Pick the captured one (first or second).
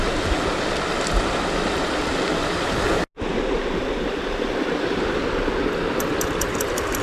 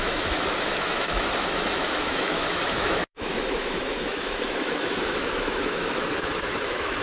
first